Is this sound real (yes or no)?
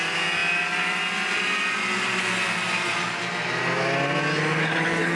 yes